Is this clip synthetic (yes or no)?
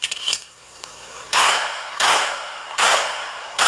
yes